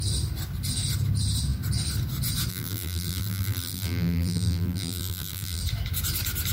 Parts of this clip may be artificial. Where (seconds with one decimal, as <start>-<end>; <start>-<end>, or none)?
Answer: 2.5-5.6